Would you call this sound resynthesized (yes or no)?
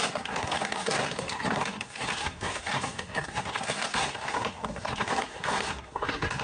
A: yes